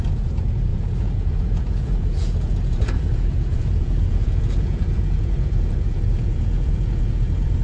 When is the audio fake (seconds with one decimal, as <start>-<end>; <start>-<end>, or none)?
0.0-7.6